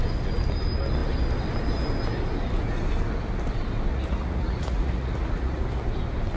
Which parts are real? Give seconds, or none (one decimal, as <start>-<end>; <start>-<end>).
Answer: 0.0-3.9; 5.6-6.4